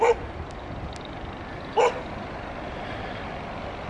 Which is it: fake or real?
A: real